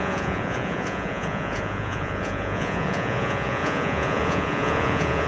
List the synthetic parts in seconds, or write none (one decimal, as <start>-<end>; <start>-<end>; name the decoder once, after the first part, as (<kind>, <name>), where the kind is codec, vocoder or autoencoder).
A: 0.0-5.3 (vocoder, Vocos)